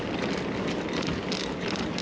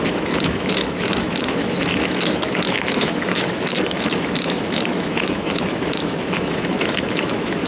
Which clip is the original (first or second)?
first